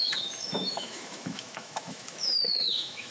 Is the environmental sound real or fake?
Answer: fake